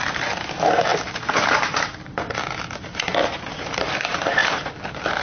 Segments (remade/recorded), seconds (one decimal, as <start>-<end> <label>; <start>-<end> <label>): 0.0-5.2 remade